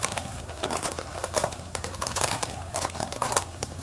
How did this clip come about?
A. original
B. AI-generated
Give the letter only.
B